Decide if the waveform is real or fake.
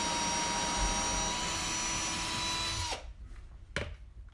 real